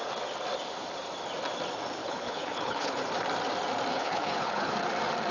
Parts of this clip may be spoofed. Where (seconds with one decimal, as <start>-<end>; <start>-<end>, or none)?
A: 2.0-3.0; 3.9-4.7